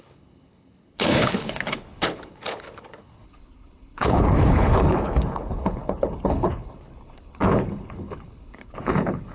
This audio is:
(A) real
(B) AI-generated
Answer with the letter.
B